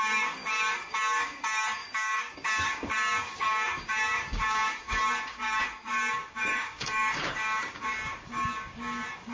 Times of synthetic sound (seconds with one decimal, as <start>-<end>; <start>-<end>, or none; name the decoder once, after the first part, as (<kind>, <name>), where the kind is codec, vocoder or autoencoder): 0.0-9.3 (codec, DAC)